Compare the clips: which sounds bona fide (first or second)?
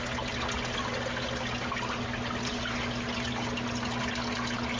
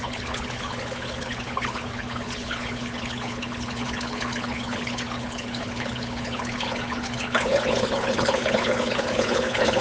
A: first